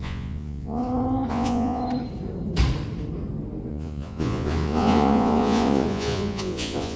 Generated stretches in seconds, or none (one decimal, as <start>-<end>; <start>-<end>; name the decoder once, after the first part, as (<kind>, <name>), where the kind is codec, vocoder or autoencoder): 0.0-0.8 (vocoder, Vocos); 1.3-1.8; 3.7-7.0